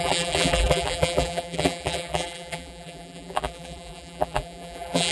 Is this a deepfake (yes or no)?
yes